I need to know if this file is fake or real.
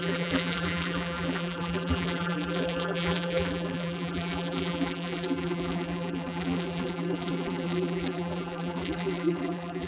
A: fake